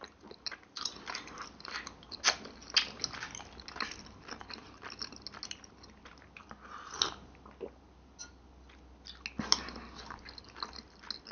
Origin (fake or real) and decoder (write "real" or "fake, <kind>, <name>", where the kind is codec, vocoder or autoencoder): real